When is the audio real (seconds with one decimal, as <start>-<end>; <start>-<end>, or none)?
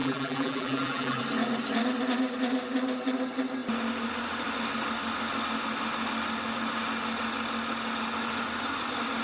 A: 1.2-9.2